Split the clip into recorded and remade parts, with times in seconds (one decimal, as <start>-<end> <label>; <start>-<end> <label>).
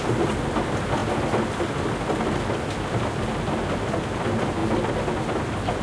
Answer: 0.0-5.8 recorded